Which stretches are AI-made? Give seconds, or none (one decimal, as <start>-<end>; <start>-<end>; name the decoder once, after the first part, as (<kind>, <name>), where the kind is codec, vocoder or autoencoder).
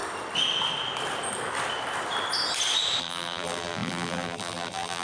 3.0-5.0 (vocoder, BigVGAN v2)